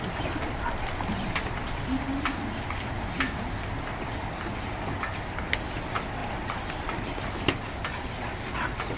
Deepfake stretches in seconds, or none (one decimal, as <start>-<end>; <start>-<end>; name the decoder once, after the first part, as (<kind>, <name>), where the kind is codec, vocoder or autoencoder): none